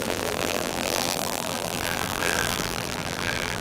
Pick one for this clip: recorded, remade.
remade